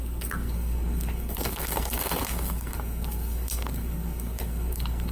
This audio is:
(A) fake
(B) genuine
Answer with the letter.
A